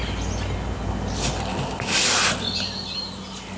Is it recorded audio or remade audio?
recorded